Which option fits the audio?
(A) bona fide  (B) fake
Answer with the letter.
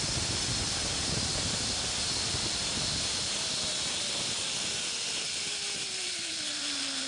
A